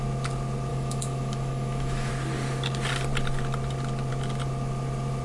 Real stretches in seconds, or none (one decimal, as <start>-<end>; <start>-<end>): 0.0-0.7; 2.1-5.2